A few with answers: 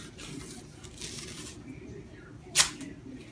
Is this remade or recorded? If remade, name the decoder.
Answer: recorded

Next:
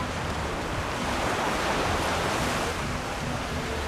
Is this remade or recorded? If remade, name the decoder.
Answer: recorded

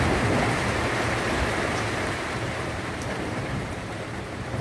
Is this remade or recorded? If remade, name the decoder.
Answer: remade, vocoder, BigVGAN v2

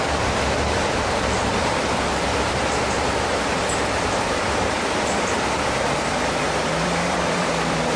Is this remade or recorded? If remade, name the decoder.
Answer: remade, vocoder, BigVGAN v2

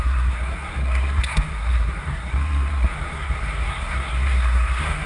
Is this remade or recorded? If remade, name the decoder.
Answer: remade, codec, SNAC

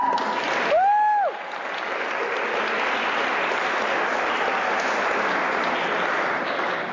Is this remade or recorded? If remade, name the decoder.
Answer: recorded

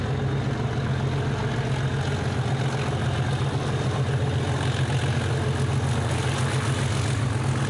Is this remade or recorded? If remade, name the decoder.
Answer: recorded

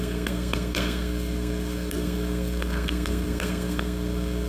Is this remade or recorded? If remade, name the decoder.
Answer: remade, codec, SNAC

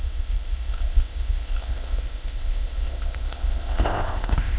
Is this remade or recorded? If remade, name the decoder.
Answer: remade, codec, ZipCodec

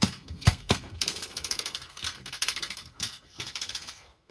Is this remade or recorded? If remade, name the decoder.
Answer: remade, codec, SNAC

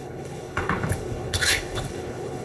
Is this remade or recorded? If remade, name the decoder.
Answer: remade, codec, HILCodec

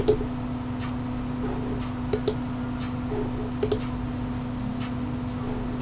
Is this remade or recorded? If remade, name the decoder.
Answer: recorded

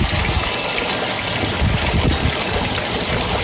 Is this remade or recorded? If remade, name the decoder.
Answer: recorded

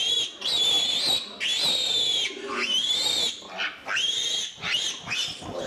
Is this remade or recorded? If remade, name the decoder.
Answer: recorded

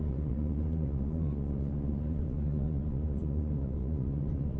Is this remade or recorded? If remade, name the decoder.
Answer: remade, vocoder, Vocos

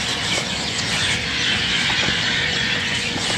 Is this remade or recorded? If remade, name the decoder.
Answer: remade, vocoder, Vocos